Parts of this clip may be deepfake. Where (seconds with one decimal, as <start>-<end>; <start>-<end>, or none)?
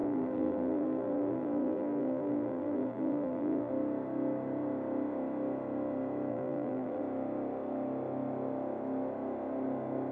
0.0-3.7; 6.3-7.0